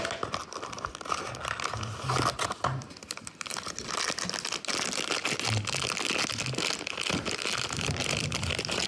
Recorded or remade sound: recorded